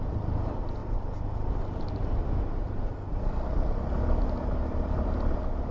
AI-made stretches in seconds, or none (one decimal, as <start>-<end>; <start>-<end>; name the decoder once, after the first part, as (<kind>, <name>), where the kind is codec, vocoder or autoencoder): none